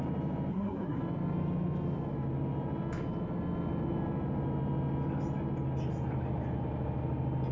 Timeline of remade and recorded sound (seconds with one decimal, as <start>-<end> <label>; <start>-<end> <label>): 0.0-0.5 recorded; 0.5-1.0 remade; 1.0-7.5 recorded